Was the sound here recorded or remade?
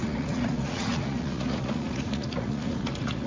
remade